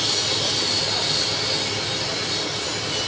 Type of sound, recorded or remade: recorded